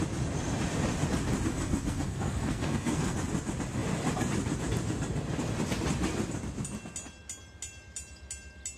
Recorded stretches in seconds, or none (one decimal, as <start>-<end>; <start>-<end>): 0.0-1.5; 3.2-8.8